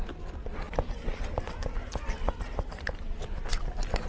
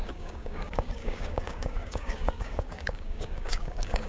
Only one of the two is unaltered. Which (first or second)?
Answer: first